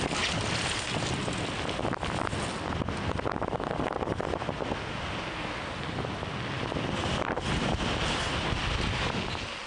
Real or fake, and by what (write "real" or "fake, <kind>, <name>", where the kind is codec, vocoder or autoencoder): real